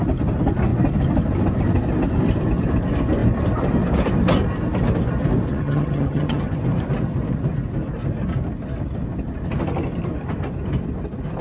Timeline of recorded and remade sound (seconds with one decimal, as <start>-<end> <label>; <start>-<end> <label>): 0.0-5.5 recorded; 5.5-6.6 remade; 6.6-11.4 recorded